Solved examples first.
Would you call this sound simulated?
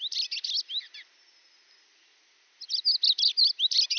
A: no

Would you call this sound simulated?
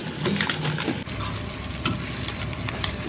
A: no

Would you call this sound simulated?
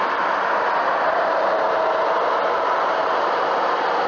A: no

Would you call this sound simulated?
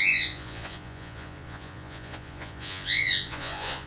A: yes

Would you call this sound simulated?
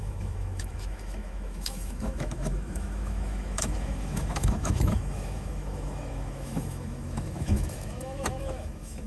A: yes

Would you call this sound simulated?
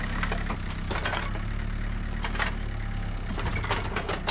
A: no